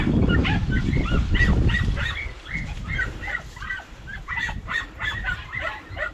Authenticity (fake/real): fake